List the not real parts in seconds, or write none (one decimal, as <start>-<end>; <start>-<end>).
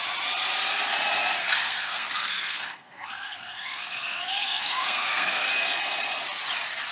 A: 1.4-5.5